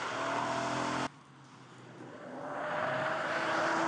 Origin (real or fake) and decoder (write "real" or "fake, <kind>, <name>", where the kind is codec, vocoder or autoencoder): real